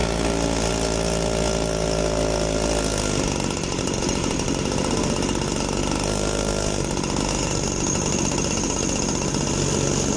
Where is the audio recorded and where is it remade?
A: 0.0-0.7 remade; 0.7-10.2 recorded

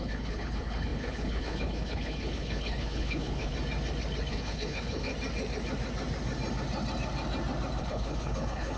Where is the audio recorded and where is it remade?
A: 0.0-3.5 remade; 3.5-4.3 recorded; 4.3-5.1 remade; 5.1-7.8 recorded; 7.8-8.8 remade

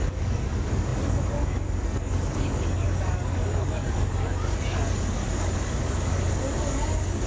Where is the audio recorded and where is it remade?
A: 0.0-7.3 remade